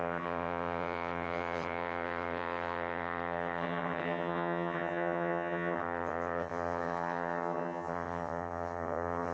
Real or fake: fake